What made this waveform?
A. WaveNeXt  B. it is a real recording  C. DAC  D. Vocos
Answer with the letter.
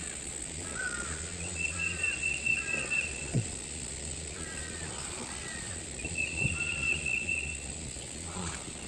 D